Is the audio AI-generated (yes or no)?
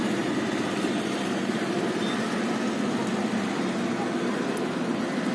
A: no